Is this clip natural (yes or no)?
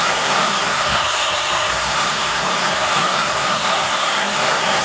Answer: no